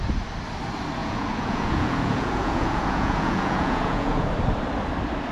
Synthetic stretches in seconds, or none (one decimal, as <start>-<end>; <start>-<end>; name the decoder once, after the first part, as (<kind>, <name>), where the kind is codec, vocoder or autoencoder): 1.0-4.2 (vocoder, Vocos)